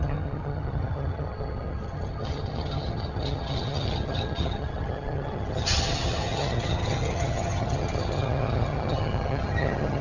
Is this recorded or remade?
remade